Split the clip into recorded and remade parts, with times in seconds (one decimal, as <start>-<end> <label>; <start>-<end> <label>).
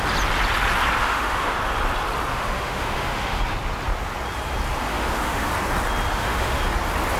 0.0-1.0 recorded; 1.0-1.6 remade; 1.6-2.3 recorded; 2.3-3.4 remade; 3.4-4.9 recorded; 4.9-5.5 remade; 5.5-6.1 recorded; 6.1-6.6 remade; 6.6-7.2 recorded